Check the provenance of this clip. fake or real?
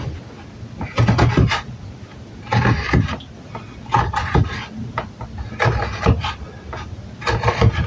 real